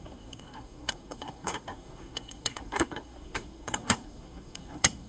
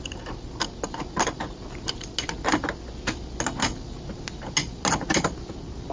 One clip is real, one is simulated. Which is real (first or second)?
second